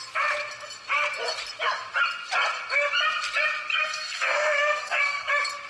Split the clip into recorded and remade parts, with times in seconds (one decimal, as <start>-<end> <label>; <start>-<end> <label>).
0.0-3.7 recorded; 3.7-5.3 remade; 5.3-5.7 recorded